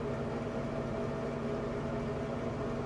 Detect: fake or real real